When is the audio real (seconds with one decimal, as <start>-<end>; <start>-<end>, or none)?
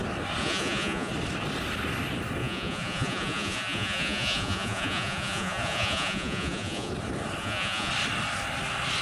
0.0-0.4; 1.1-2.4; 6.9-7.4; 7.9-9.0